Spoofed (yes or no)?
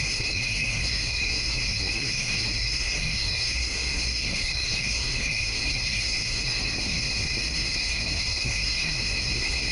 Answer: yes